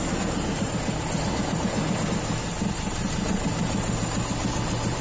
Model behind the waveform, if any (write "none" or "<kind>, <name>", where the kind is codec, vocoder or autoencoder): none